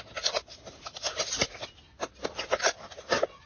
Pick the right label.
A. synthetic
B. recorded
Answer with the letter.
B